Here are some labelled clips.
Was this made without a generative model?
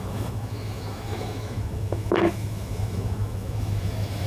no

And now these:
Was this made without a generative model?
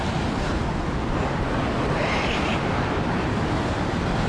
yes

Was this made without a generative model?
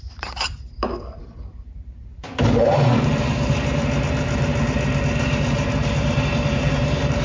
no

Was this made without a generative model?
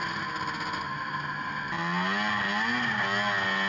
yes